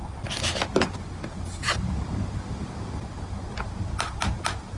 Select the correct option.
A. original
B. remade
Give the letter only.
A